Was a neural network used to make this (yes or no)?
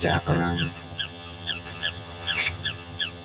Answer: yes